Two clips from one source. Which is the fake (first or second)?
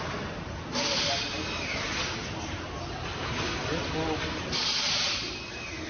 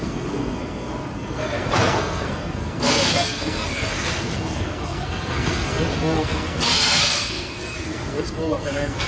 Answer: second